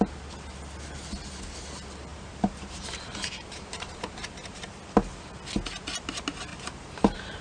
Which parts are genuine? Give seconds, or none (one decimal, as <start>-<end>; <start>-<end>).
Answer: 0.0-2.1; 4.7-6.5